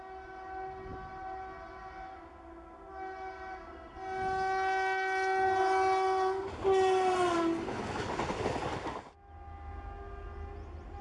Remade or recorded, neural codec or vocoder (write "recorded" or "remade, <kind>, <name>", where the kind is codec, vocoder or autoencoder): recorded